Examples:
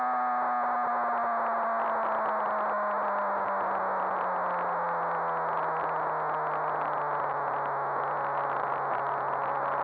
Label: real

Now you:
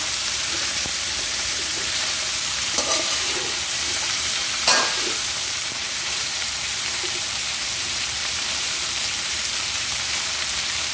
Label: fake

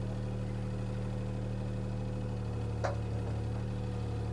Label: real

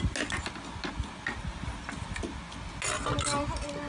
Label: real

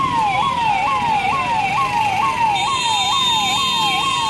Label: real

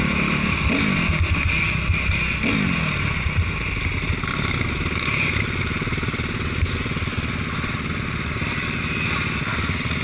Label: real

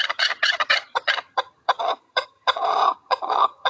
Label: fake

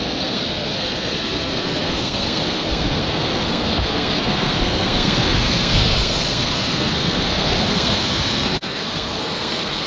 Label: fake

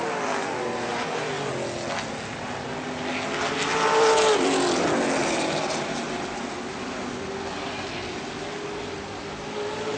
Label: real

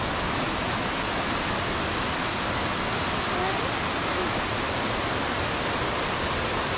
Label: real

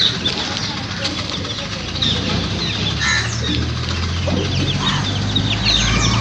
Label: real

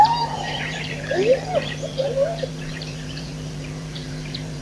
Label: fake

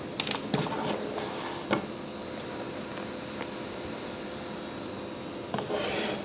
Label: real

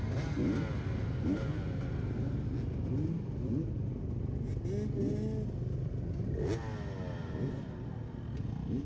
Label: real